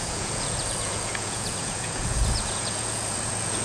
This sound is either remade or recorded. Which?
remade